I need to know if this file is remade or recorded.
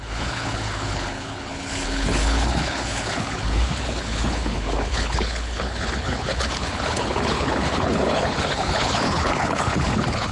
remade